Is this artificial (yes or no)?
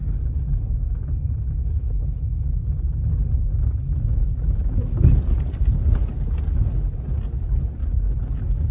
no